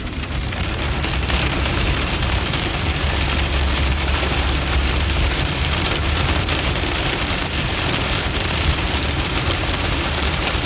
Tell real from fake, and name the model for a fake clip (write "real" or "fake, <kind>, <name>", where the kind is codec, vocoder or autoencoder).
fake, vocoder, BigVGAN v2